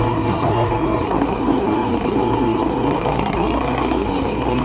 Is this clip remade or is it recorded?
remade